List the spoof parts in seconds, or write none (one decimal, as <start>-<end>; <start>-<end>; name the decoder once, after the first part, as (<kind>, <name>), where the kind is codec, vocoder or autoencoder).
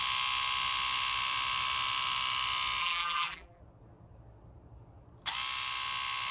2.8-3.6 (vocoder, BigVGAN v2)